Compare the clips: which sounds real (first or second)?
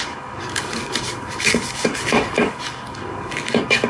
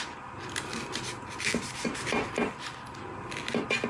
second